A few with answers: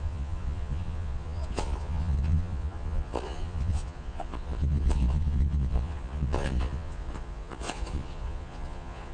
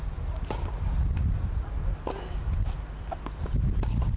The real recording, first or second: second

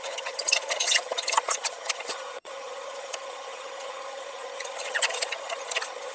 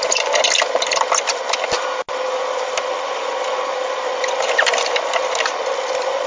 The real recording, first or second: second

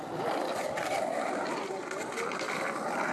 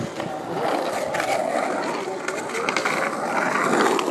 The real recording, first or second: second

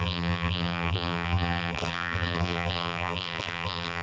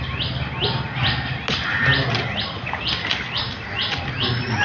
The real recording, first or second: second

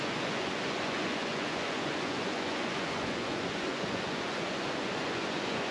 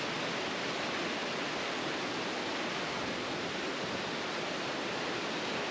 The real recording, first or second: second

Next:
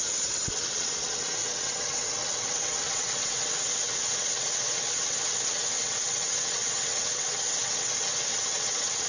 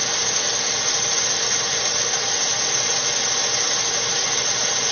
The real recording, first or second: second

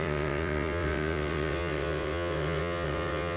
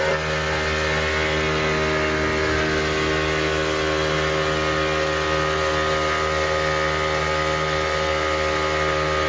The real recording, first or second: second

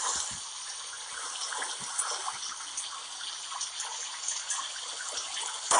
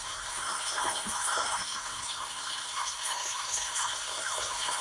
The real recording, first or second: first